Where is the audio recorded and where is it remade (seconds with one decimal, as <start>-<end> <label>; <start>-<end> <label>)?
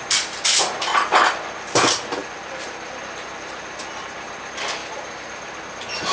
0.0-2.2 recorded; 2.2-3.0 remade; 3.0-4.8 recorded; 4.8-5.6 remade; 5.6-6.1 recorded